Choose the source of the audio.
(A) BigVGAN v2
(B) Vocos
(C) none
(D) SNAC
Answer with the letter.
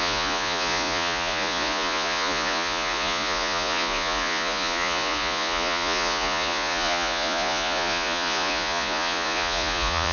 B